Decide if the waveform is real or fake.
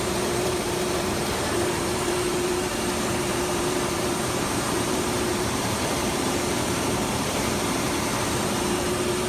fake